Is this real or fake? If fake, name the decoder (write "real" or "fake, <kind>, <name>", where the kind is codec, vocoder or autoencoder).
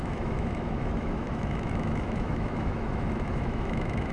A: fake, autoencoder, DAC-VAE